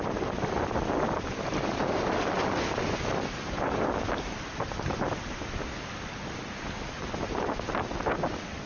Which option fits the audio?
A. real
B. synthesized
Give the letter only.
A